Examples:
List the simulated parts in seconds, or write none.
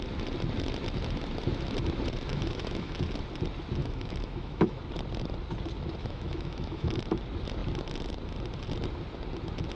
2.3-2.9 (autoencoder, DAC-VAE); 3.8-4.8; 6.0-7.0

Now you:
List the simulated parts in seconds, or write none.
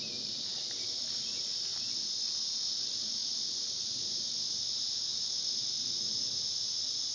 none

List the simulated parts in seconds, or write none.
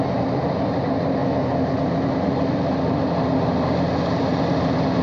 none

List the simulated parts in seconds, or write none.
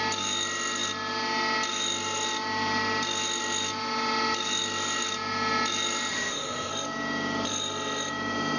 6.1-6.7 (autoencoder, DAC-VAE)